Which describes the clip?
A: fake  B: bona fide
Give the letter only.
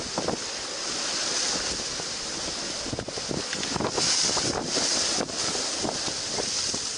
B